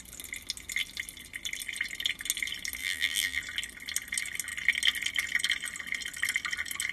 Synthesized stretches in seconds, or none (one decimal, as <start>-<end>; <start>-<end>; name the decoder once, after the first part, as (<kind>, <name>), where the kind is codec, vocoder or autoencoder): 2.8-3.4 (vocoder, BigVGAN v2)